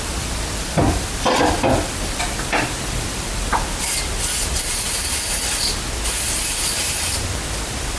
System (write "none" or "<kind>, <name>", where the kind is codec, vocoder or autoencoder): none